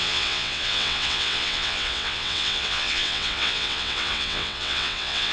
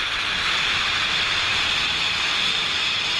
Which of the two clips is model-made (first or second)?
first